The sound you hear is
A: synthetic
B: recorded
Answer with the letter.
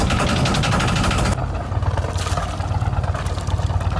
B